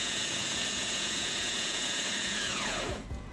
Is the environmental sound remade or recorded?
remade